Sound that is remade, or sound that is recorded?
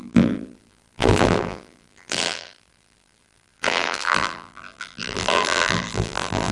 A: remade